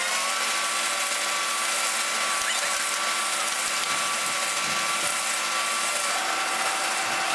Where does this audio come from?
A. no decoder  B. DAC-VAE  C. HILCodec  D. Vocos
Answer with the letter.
A